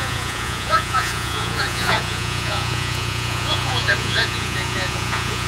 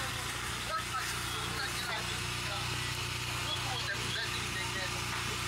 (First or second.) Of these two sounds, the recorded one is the second